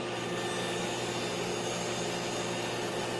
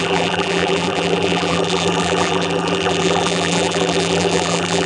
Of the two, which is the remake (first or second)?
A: second